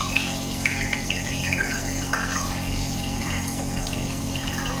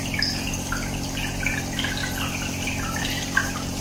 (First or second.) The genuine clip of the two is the second